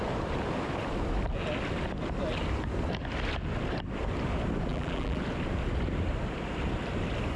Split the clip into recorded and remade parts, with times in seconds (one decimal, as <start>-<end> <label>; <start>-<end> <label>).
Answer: 0.0-4.7 recorded; 4.7-5.2 remade; 5.2-7.4 recorded